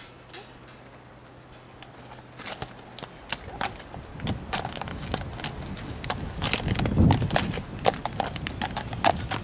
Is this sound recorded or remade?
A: recorded